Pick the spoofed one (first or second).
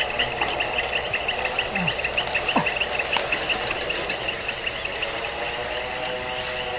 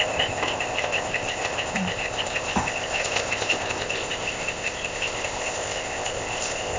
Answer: second